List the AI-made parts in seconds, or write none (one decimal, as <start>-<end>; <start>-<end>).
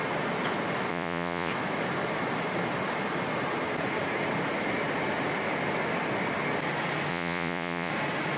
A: 0.9-1.5; 7.1-7.9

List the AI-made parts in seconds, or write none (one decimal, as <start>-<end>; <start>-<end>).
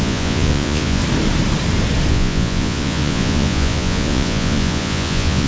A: 0.0-1.0; 2.1-5.5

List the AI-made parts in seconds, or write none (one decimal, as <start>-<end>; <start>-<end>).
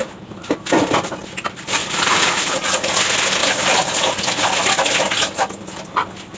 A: 1.8-3.0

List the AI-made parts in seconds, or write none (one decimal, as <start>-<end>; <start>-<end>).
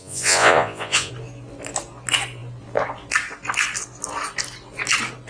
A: 0.0-1.1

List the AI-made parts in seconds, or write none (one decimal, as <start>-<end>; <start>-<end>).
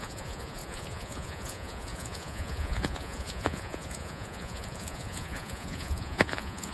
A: 0.0-6.7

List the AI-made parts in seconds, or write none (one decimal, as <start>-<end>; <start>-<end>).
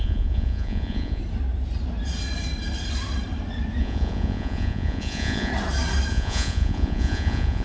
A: 0.0-1.2; 3.8-5.5; 6.1-7.6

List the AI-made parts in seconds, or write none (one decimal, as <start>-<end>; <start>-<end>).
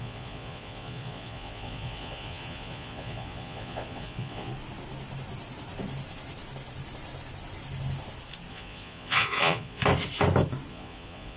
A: 0.0-4.5; 8.5-9.8; 10.7-11.4